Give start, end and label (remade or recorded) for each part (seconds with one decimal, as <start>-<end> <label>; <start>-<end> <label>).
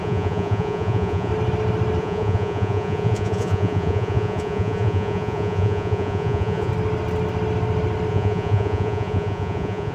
0.0-1.3 remade; 1.3-2.0 recorded; 2.0-6.7 remade; 6.7-8.1 recorded; 8.1-9.9 remade